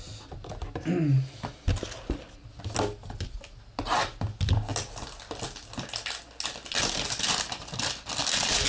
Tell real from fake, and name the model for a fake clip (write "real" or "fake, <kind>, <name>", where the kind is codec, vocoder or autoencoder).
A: real